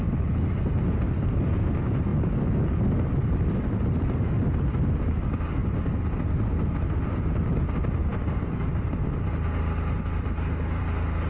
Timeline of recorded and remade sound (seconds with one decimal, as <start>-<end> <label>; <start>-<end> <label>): 0.0-11.3 recorded